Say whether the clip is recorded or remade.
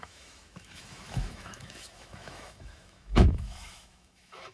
remade